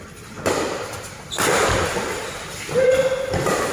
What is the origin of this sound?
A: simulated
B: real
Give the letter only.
B